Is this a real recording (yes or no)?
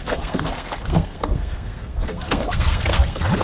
no